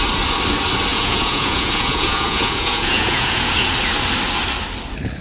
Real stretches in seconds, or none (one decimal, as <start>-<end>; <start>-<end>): 0.0-0.9; 3.7-5.2

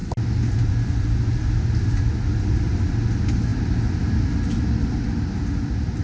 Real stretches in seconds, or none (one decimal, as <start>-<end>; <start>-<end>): 0.0-6.0

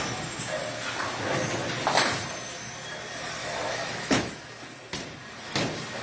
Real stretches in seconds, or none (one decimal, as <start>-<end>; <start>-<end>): 0.0-3.4; 4.3-6.0

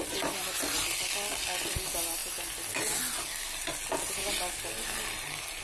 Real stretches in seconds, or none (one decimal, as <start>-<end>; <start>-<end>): 0.0-5.6

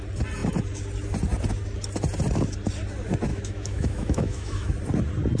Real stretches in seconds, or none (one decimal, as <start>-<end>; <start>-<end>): 0.0-3.3; 4.7-5.4

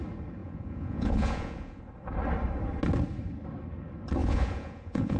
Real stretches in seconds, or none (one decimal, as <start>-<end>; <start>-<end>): 0.0-0.4; 1.8-4.2

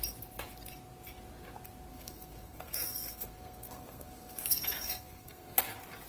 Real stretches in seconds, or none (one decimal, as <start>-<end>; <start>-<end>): 0.0-1.9; 5.6-6.1